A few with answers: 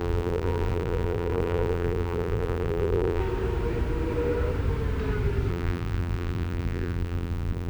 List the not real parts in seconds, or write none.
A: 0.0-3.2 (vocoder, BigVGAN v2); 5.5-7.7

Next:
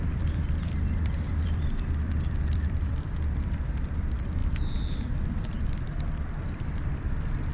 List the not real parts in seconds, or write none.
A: 0.0-7.5 (vocoder, BigVGAN v2)

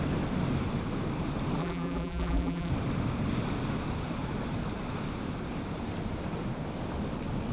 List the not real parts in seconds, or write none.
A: 1.6-2.7 (vocoder, BigVGAN v2)